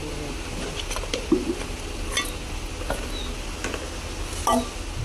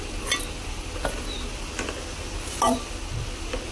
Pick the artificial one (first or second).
second